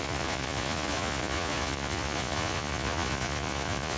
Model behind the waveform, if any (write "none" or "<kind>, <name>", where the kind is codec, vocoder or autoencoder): vocoder, Vocos